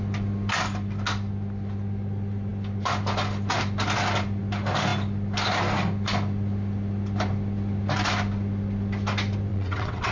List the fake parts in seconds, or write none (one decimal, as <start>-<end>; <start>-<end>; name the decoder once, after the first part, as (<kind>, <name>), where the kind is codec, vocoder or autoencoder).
9.5-10.1 (vocoder, WaveNeXt)